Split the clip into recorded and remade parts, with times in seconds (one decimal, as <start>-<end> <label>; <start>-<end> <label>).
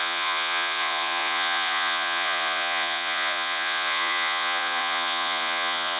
0.0-6.0 remade